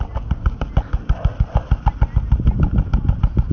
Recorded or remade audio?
recorded